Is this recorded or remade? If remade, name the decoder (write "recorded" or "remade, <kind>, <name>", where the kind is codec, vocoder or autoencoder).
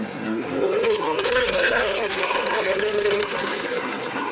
remade, codec, SNAC